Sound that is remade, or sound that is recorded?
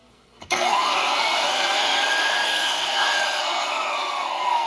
remade